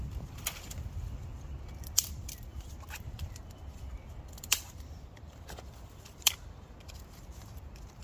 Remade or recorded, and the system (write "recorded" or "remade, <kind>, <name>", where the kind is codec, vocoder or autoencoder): remade, vocoder, BigVGAN v2